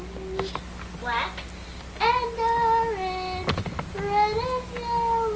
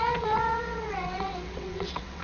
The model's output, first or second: second